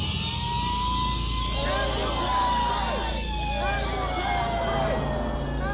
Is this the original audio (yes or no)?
yes